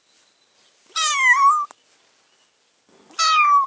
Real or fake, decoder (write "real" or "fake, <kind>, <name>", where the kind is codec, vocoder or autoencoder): real